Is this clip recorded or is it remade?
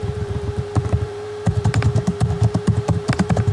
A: remade